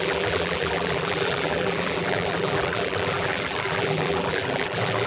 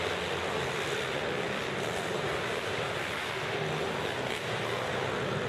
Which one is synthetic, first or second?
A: first